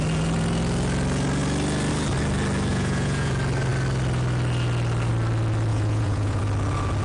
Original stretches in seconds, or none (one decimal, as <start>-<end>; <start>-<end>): 0.0-2.7; 3.3-5.7; 6.4-7.0